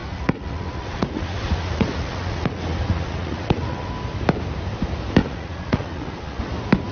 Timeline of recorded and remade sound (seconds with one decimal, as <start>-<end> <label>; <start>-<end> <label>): 0.0-3.9 remade; 3.9-5.2 recorded; 5.2-6.4 remade; 6.4-6.9 recorded